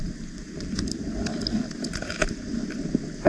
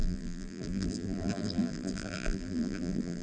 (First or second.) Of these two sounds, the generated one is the second